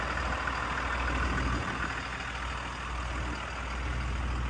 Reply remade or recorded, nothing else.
recorded